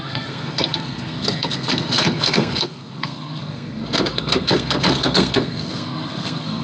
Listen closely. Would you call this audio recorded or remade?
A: remade